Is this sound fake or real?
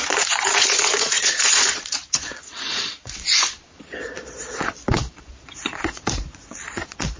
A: fake